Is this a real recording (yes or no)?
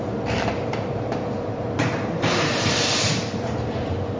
no